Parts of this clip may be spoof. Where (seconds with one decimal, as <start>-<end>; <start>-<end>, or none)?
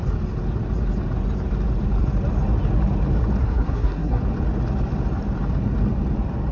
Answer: 3.4-4.2